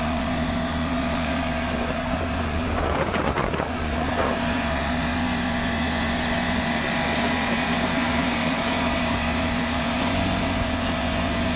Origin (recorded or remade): remade